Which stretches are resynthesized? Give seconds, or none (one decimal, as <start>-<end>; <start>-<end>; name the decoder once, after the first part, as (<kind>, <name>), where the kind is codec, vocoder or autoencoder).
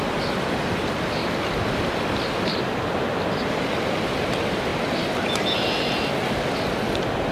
none